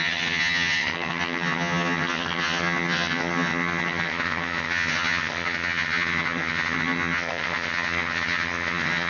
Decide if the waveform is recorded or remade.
remade